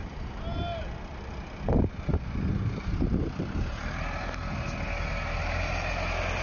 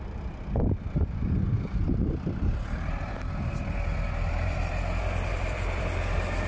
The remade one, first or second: second